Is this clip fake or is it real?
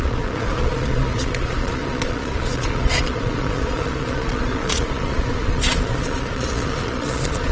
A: fake